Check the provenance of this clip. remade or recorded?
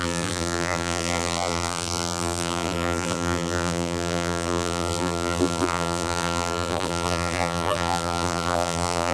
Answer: remade